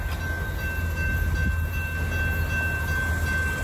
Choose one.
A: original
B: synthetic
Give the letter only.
A